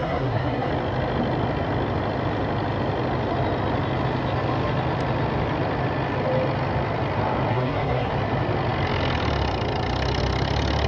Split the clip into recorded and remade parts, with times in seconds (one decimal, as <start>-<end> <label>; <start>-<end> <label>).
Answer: 0.0-0.7 remade; 0.7-7.5 recorded; 7.5-8.1 remade; 8.1-10.9 recorded